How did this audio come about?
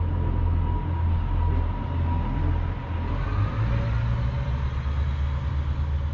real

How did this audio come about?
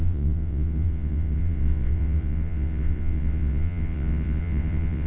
fake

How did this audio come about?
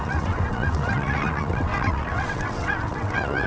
fake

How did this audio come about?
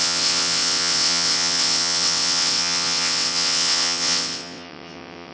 fake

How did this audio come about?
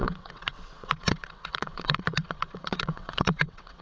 fake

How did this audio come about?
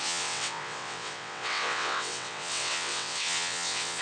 fake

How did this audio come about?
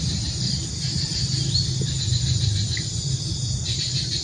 real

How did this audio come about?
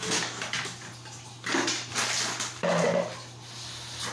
real